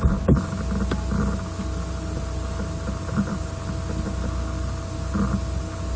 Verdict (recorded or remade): recorded